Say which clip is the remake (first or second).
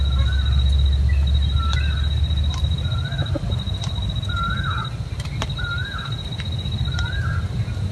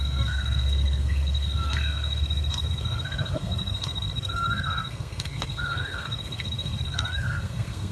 second